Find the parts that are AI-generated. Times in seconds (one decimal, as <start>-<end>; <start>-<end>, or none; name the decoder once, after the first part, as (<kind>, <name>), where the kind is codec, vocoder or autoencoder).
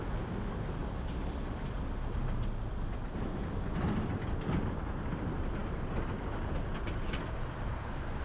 none